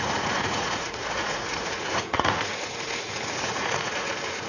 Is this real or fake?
fake